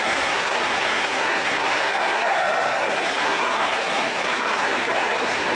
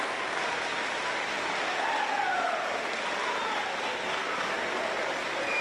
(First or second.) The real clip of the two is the second